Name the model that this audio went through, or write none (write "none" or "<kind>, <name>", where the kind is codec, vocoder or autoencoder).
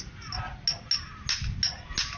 none